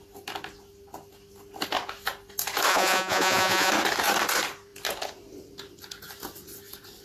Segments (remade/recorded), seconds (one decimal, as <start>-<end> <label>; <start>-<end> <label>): 0.0-2.7 recorded; 2.7-3.7 remade; 3.7-7.0 recorded